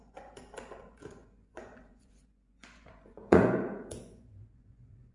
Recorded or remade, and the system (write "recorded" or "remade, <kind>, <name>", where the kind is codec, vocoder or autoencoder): remade, vocoder, Vocos